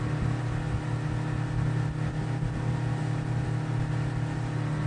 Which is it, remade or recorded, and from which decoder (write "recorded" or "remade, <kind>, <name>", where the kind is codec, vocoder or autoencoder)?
recorded